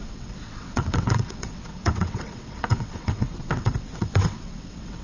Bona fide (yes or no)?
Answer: no